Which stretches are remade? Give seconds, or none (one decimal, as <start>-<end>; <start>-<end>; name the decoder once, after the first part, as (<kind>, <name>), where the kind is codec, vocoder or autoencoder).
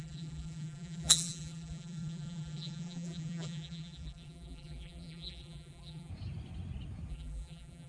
0.0-6.1 (vocoder, BigVGAN v2); 7.1-7.9